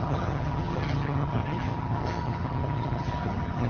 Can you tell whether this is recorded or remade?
remade